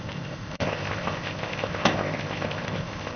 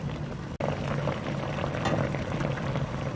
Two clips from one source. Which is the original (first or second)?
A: second